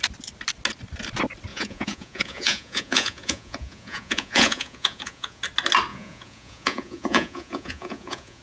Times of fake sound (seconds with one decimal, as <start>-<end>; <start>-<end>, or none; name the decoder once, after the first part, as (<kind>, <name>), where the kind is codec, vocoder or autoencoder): 1.5-5.4 (vocoder, Vocos); 5.9-8.4